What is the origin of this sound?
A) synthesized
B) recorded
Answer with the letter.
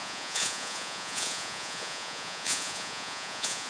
A